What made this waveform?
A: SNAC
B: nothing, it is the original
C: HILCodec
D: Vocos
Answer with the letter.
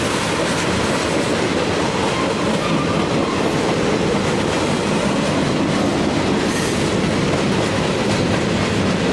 B